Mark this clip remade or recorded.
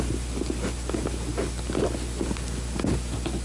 recorded